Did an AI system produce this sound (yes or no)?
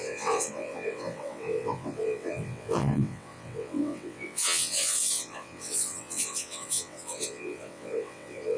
yes